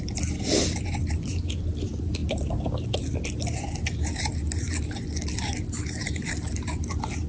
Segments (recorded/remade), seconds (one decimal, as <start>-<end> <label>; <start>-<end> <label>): 0.0-7.3 recorded